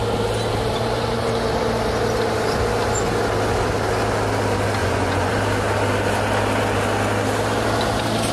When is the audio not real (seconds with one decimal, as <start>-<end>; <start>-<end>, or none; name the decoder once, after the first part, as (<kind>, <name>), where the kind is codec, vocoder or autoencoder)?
4.8-5.3 (vocoder, Vocos)